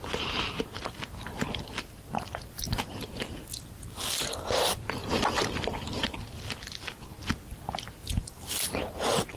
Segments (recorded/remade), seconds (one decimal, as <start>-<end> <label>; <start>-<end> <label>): 0.0-7.1 remade; 7.1-8.1 recorded; 8.1-9.4 remade